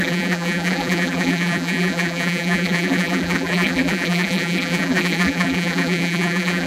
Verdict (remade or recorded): remade